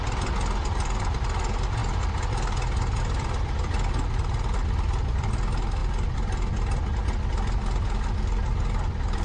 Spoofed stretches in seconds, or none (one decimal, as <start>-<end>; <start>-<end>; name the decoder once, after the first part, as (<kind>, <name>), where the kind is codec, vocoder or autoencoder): none

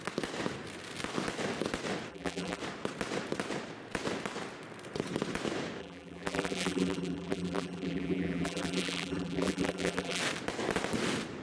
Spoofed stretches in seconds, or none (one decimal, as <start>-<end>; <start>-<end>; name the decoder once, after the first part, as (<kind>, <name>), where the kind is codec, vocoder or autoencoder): 2.1-2.6 (vocoder, BigVGAN v2); 5.8-10.2

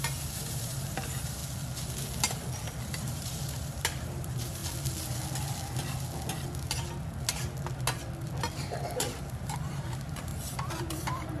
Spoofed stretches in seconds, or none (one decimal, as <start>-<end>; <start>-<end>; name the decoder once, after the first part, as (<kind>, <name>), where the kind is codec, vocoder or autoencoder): 0.0-1.4 (vocoder, BigVGAN v2); 3.0-4.6; 8.5-10.3; 10.8-11.4